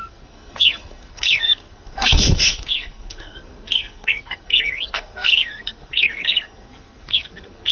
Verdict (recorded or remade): remade